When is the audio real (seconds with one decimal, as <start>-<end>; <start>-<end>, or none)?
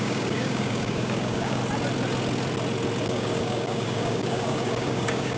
1.6-3.0